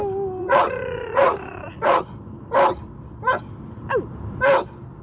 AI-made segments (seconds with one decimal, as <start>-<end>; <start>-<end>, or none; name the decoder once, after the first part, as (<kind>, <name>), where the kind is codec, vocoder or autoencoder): 0.4-2.0 (vocoder, Vocos)